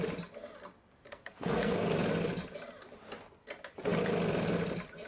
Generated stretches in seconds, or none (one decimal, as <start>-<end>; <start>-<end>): 1.1-1.9